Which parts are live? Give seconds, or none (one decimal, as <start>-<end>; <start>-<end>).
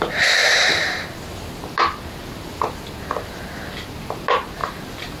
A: 0.0-0.4; 1.2-4.6